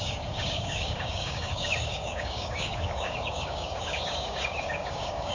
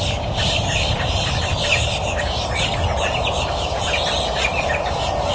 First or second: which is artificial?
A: first